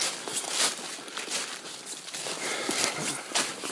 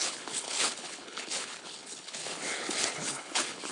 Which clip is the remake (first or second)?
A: second